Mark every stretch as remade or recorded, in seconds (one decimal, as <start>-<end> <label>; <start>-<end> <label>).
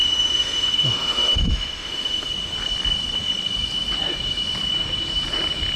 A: 0.0-2.3 remade; 2.3-5.8 recorded